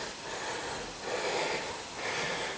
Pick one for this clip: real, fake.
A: real